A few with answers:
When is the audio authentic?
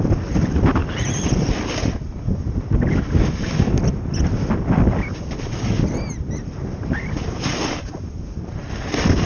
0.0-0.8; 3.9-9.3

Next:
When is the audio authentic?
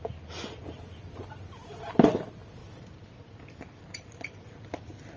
0.0-5.2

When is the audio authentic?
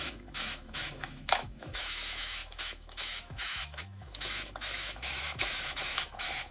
none